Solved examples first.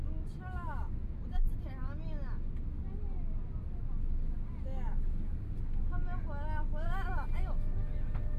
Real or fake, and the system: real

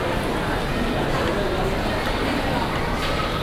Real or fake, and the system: real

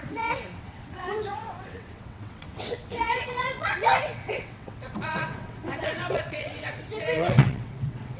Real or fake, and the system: fake, vocoder, WaveNeXt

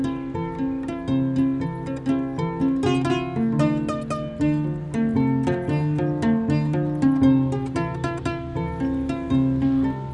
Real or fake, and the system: real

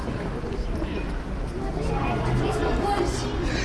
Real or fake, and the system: real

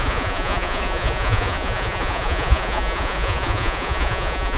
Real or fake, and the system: fake, vocoder, Vocos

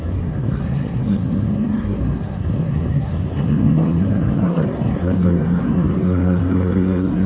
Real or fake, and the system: fake, codec, SNAC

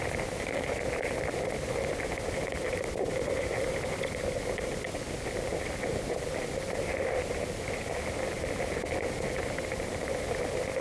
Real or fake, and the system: real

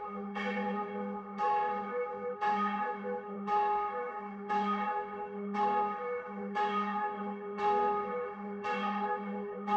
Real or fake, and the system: fake, autoencoder, DAC-VAE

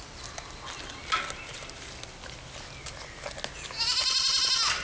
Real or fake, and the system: real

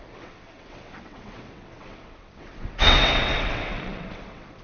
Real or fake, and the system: fake, vocoder, WaveNeXt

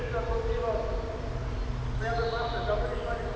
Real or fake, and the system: real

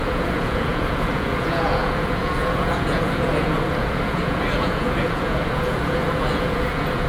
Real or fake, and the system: fake, vocoder, Vocos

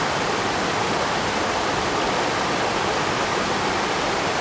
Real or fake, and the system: real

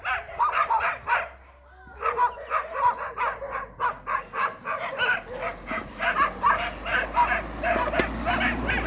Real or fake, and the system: real